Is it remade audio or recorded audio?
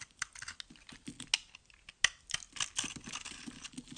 recorded